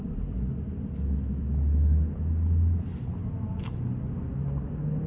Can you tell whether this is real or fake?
real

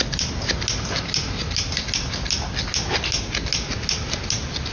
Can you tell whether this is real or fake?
real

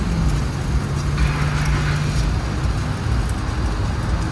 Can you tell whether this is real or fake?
real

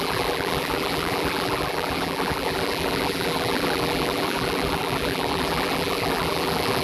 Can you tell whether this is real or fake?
fake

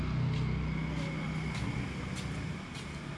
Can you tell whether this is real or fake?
real